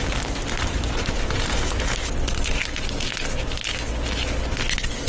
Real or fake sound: real